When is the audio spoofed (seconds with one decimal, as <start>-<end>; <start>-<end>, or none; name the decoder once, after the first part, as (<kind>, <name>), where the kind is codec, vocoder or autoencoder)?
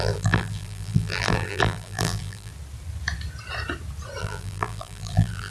0.0-2.5 (vocoder, BigVGAN v2); 4.2-5.5